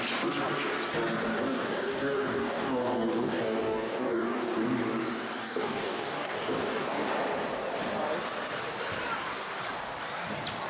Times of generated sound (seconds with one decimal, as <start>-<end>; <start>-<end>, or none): 1.3-4.5; 5.4-7.1